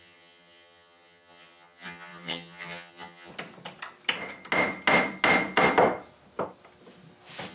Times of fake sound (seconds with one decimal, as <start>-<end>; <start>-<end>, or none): 0.0-3.3